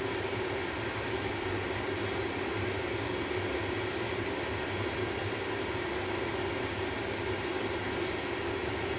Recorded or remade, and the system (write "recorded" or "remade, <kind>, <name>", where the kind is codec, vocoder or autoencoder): recorded